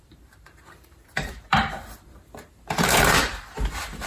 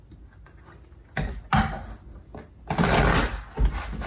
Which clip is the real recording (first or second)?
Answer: second